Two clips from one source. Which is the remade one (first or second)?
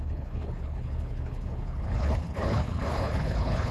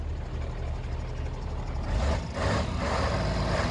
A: first